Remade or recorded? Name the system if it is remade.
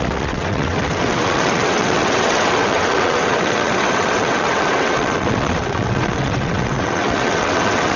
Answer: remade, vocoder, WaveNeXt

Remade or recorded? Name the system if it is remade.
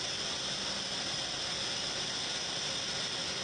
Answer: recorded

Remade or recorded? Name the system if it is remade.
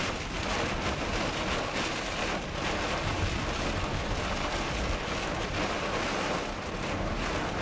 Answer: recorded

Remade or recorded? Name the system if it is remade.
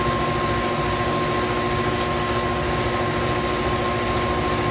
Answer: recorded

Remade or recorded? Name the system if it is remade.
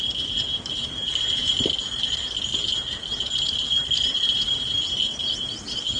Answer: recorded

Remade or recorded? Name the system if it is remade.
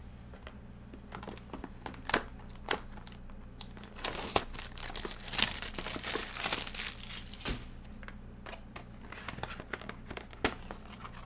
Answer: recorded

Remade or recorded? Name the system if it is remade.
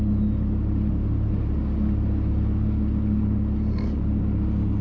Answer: recorded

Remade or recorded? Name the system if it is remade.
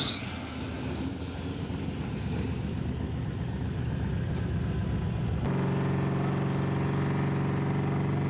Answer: recorded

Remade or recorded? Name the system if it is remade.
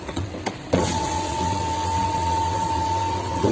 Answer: remade, vocoder, WaveNeXt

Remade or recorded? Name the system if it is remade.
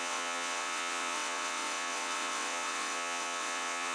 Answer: remade, vocoder, WaveNeXt